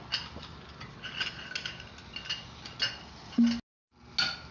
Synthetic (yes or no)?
no